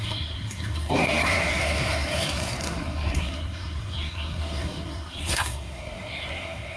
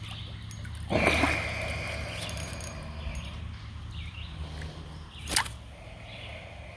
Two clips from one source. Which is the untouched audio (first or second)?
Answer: second